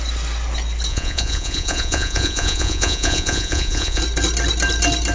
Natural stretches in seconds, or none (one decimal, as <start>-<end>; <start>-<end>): 0.0-0.9; 4.0-5.1